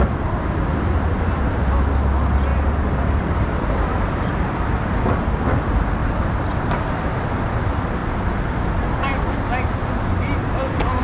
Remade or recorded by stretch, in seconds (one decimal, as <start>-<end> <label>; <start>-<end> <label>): 0.0-2.5 recorded; 2.5-5.0 remade; 5.0-6.0 recorded; 6.0-7.3 remade; 7.3-11.0 recorded